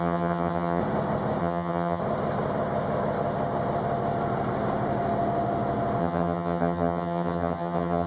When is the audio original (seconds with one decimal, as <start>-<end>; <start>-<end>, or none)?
0.8-1.4; 2.0-6.0